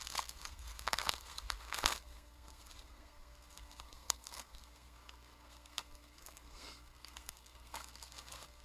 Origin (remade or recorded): remade